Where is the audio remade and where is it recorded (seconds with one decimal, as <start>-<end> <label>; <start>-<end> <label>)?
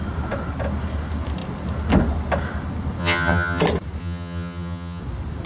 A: 0.0-3.0 recorded; 3.0-3.6 remade; 3.6-4.0 recorded; 4.0-5.0 remade; 5.0-5.5 recorded